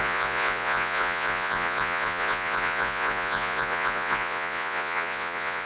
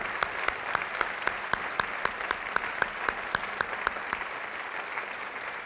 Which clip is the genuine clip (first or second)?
second